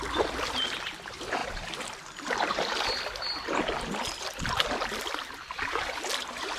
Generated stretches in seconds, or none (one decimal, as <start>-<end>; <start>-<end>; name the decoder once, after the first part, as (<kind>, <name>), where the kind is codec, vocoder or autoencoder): none